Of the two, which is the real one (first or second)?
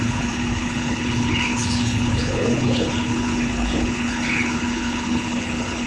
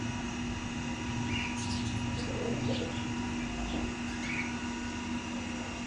second